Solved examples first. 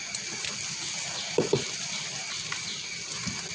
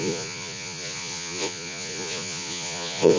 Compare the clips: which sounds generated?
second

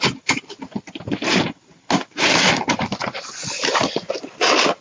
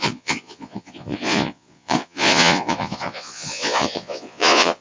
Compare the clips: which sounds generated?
second